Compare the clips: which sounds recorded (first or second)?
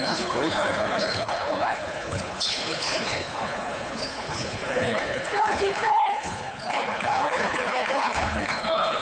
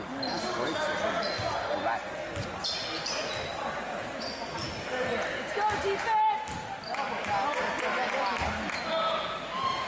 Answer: second